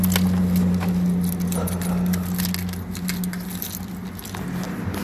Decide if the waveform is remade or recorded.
recorded